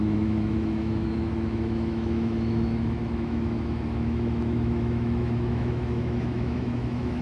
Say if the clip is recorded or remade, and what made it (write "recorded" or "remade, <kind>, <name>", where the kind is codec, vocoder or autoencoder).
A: remade, autoencoder, DAC-VAE